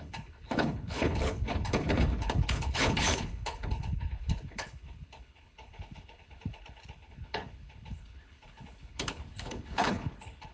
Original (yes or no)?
no